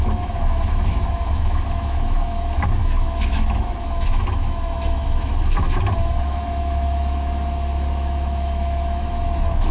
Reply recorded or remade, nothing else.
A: remade